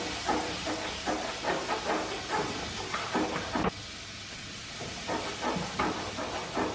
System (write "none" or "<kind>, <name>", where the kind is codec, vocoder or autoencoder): none